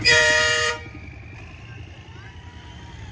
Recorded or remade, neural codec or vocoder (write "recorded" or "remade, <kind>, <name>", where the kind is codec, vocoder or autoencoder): remade, vocoder, BigVGAN v2